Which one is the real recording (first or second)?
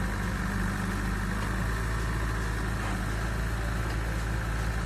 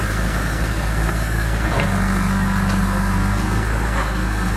first